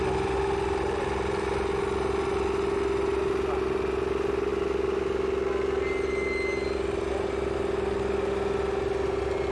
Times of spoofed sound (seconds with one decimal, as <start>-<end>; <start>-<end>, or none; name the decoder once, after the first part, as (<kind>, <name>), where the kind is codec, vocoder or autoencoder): none